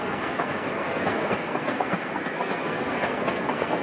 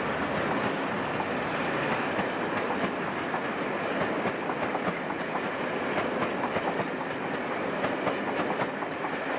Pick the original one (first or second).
second